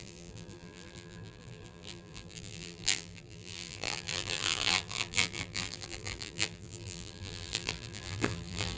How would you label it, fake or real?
fake